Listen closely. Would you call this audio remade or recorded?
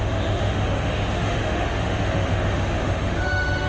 remade